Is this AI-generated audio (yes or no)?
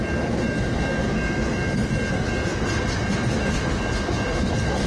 no